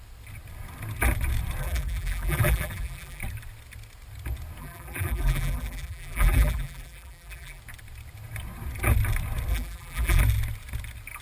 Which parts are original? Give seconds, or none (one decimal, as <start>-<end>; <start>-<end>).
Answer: 0.0-1.6; 3.2-4.6; 7.6-9.5; 10.2-11.2